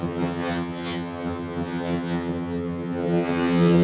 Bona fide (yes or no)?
no